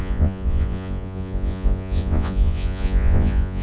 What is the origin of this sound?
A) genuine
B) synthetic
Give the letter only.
B